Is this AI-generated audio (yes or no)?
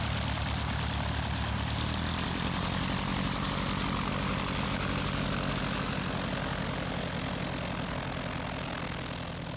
no